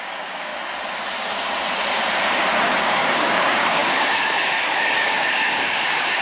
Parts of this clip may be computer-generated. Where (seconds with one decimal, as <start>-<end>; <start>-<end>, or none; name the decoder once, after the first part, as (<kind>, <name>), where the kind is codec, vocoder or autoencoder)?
0.0-0.5 (codec, DAC); 2.8-6.2